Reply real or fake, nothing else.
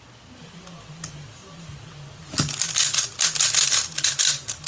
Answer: real